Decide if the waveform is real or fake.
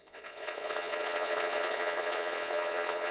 fake